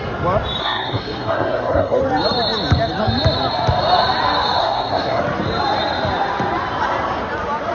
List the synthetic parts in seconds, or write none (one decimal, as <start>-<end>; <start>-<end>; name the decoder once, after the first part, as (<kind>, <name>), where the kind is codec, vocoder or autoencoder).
0.6-2.0 (codec, SNAC); 4.6-5.2